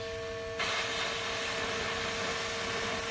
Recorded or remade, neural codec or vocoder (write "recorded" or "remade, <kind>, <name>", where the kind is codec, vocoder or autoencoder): recorded